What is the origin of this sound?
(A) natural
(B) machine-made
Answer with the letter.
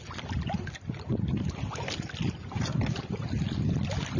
A